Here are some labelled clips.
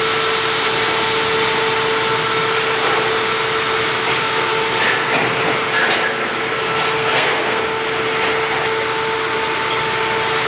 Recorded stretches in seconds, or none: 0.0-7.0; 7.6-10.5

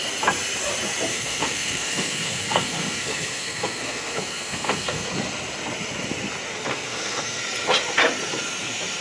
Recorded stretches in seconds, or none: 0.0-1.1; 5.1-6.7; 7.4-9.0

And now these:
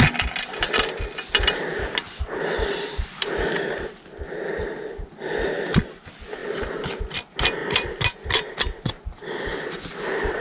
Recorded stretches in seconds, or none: 0.0-10.4

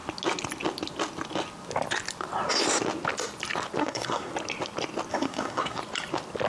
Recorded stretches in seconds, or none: 0.0-3.8; 4.3-5.1; 5.8-6.5